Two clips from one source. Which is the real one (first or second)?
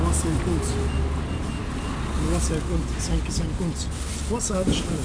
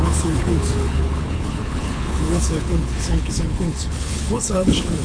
first